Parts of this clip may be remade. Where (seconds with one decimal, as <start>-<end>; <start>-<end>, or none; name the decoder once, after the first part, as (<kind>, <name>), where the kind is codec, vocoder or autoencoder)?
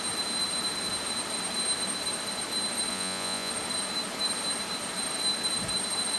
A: 2.9-3.5 (vocoder, Vocos)